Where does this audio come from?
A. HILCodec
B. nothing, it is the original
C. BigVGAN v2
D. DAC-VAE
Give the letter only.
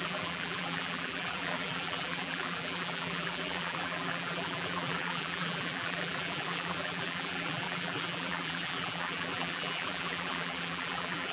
C